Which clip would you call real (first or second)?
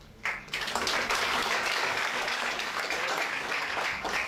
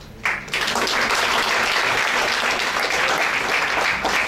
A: second